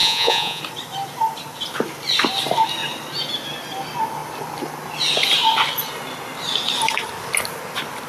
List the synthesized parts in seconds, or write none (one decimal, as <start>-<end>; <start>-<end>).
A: 0.0-0.6